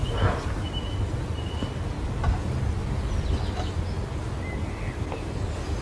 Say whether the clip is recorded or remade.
recorded